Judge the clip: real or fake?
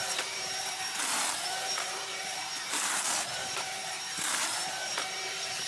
fake